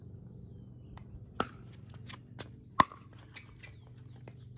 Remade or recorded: recorded